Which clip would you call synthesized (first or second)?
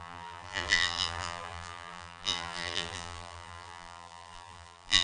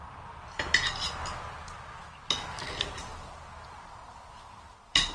first